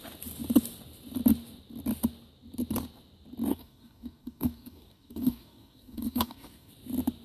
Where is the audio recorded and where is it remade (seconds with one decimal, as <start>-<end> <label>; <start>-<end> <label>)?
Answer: 0.0-3.5 recorded; 3.5-6.7 remade; 6.7-7.2 recorded